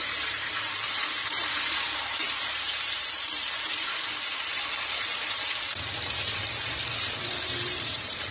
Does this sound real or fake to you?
fake